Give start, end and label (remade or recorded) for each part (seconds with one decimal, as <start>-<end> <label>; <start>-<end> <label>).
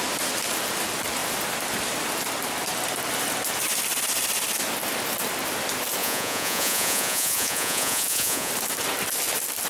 0.0-6.0 recorded; 6.0-8.5 remade; 8.5-9.7 recorded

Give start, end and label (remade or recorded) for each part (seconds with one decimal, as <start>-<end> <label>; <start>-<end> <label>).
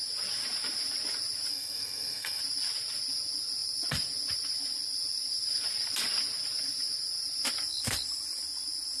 0.0-1.5 recorded; 1.5-2.4 remade; 2.4-9.0 recorded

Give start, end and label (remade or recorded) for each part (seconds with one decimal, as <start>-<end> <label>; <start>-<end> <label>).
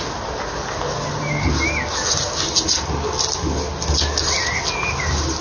0.0-5.4 recorded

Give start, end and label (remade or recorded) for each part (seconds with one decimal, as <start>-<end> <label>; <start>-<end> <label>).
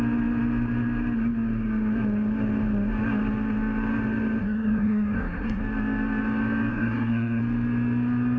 0.0-4.4 recorded; 4.4-5.6 remade; 5.6-6.7 recorded; 6.7-7.4 remade; 7.4-8.4 recorded